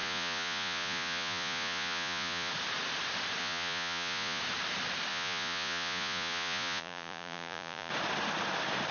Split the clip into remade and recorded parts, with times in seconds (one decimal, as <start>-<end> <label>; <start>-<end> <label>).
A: 0.0-2.5 remade; 2.5-3.4 recorded; 3.4-4.4 remade; 4.4-5.1 recorded; 5.1-7.9 remade; 7.9-8.9 recorded

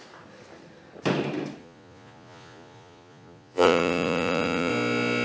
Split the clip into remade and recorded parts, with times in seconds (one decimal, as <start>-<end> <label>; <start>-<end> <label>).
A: 0.0-1.6 recorded; 1.6-4.7 remade; 4.7-5.2 recorded